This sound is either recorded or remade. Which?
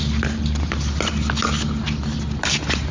recorded